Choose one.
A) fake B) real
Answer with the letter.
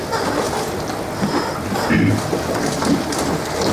B